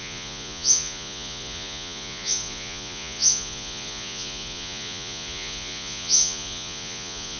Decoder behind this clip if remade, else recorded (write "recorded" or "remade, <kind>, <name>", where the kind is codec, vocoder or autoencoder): remade, vocoder, Vocos